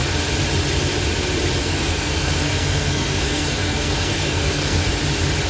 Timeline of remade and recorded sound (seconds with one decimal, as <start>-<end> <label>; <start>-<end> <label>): 0.0-1.6 recorded; 1.6-4.9 remade; 4.9-5.5 recorded